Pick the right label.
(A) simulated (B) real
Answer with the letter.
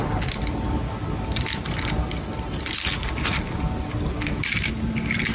B